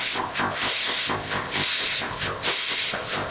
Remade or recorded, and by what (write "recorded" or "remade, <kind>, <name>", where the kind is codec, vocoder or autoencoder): remade, codec, ZipCodec